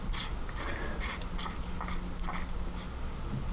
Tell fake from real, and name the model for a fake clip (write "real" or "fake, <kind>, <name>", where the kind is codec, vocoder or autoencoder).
real